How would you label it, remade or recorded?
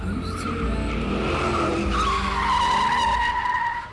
recorded